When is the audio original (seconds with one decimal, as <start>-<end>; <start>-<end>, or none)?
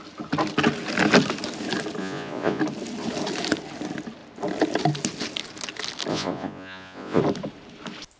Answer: 0.0-2.0; 2.6-6.1; 7.2-8.2